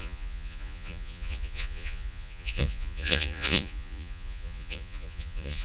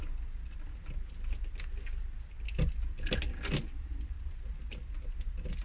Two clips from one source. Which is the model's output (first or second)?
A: first